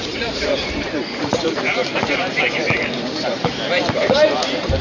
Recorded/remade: remade